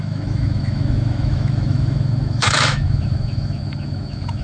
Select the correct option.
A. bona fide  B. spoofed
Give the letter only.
B